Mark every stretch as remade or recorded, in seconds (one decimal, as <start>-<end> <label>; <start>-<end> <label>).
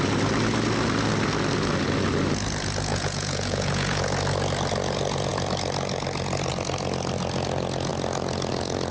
0.0-2.9 recorded; 2.9-4.0 remade; 4.0-8.9 recorded